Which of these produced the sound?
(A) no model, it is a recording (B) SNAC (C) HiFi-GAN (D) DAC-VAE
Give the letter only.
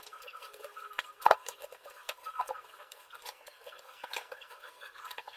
B